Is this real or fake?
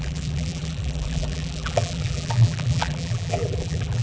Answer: fake